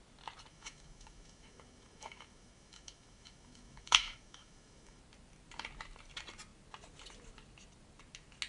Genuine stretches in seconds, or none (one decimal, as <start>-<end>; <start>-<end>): 0.0-0.5; 5.0-8.5